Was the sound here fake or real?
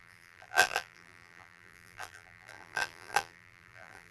fake